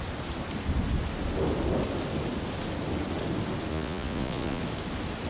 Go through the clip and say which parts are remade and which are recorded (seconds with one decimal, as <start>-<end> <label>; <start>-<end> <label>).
0.0-3.7 recorded; 3.7-4.6 remade; 4.6-5.3 recorded